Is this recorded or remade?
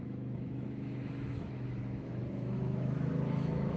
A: remade